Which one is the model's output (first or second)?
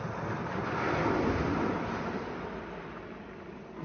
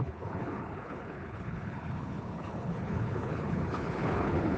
second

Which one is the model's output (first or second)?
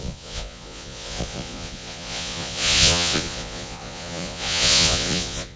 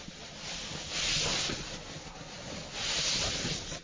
first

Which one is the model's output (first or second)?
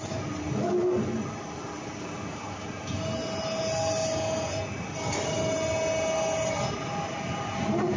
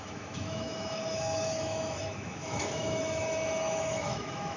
second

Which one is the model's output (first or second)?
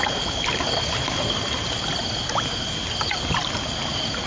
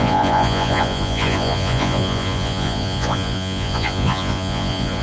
second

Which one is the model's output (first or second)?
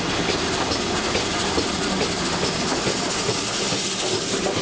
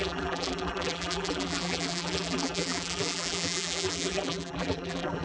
second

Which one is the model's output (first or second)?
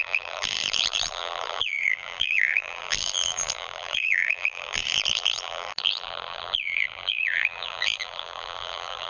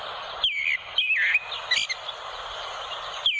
first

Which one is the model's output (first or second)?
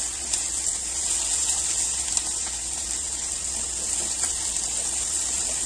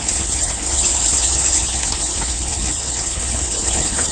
second